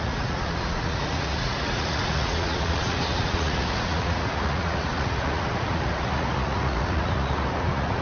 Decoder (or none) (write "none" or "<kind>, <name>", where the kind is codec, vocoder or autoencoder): vocoder, Vocos